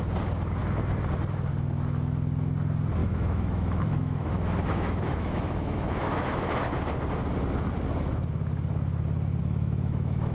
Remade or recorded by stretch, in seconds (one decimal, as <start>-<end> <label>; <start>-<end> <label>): 0.0-3.0 recorded; 3.0-6.6 remade; 6.6-9.4 recorded; 9.4-10.3 remade